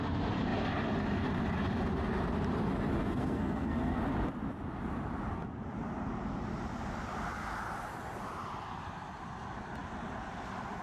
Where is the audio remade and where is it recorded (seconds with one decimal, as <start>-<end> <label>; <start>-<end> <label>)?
0.0-3.0 recorded; 3.0-4.0 remade; 4.0-10.8 recorded